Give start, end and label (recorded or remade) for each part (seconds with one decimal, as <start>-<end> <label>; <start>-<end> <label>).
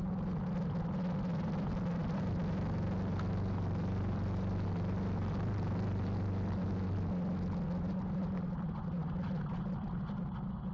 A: 0.0-10.7 recorded